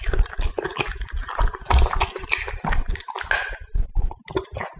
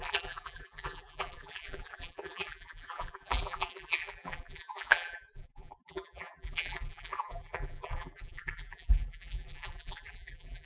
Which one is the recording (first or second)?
first